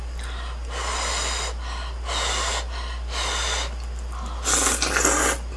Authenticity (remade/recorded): recorded